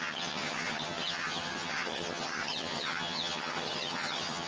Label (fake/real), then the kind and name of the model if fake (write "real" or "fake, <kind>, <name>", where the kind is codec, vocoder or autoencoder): fake, vocoder, HiFi-GAN